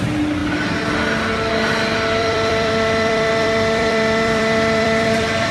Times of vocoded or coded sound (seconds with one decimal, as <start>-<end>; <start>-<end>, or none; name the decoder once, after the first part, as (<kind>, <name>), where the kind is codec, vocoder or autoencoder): 2.2-5.5 (vocoder, BigVGAN v2)